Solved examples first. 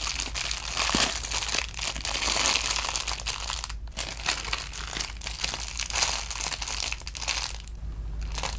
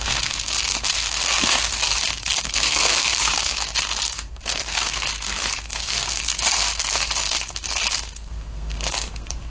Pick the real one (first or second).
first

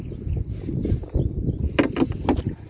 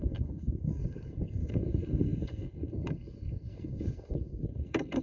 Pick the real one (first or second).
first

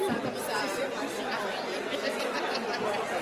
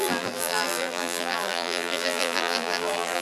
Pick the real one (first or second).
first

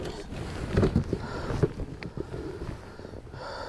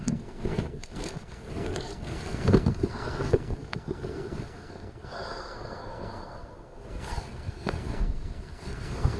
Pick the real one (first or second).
first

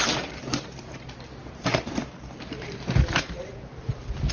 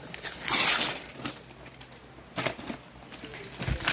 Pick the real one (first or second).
second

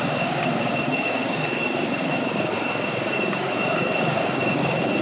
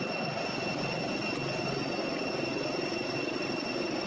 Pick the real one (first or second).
second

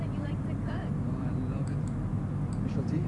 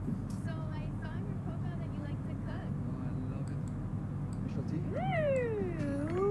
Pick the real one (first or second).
second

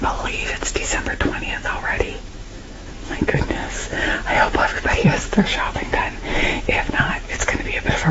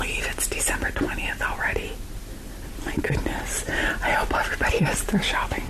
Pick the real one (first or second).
second